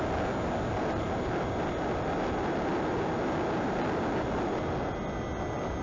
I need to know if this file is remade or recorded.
recorded